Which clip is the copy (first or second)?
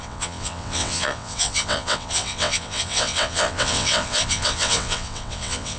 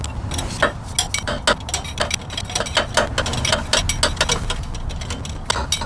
first